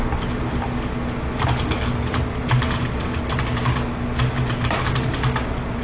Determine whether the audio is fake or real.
real